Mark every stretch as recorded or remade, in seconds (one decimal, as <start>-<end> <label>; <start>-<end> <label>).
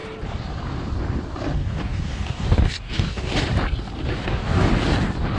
0.0-1.6 recorded; 1.6-3.3 remade; 3.3-4.1 recorded; 4.1-4.7 remade; 4.7-5.4 recorded